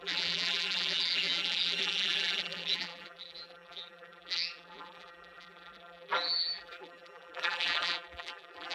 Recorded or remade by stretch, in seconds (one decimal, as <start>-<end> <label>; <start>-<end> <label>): 0.0-8.7 remade